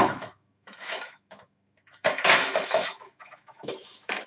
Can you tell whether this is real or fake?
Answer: fake